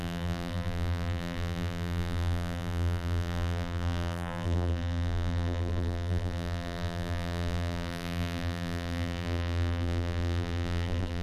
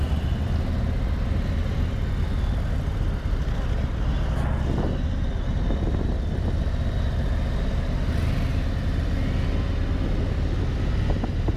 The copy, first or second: first